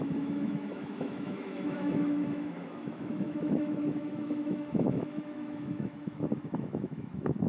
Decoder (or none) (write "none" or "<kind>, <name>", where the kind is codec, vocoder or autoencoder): autoencoder, DAC-VAE